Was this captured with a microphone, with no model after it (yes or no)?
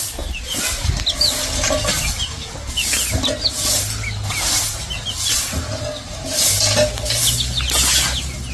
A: yes